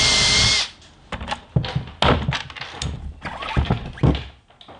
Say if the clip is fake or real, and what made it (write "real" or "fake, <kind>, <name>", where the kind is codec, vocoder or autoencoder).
real